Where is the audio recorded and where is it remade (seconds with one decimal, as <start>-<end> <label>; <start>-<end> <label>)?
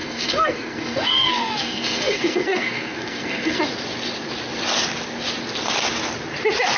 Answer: 0.0-3.6 remade; 3.6-6.8 recorded